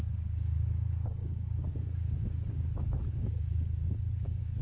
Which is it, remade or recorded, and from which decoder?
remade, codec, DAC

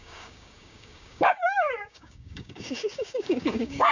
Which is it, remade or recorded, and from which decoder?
remade, codec, DAC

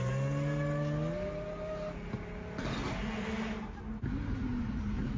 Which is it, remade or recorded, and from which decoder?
recorded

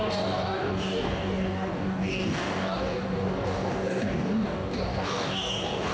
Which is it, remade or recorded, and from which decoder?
remade, codec, DAC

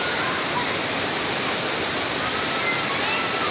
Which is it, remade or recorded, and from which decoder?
recorded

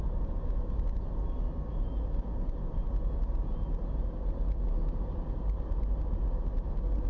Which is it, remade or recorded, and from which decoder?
recorded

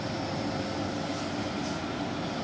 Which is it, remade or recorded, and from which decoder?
recorded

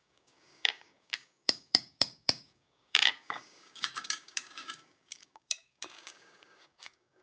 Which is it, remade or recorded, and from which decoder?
remade, codec, DAC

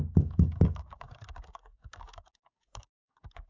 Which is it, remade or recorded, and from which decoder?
remade, codec, DAC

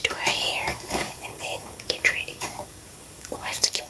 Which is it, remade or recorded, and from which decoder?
remade, codec, DAC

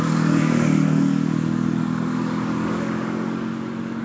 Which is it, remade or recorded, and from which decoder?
remade, codec, DAC